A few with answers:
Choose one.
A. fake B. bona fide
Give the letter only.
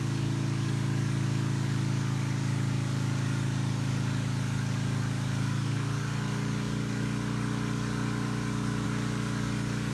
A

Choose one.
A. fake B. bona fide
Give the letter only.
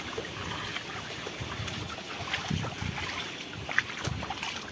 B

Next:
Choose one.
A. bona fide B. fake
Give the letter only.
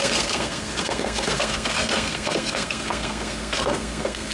B